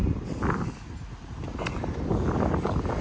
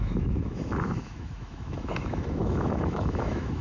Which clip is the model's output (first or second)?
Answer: second